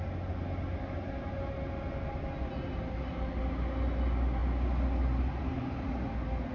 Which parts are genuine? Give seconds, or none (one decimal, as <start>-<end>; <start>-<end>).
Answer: 0.0-6.5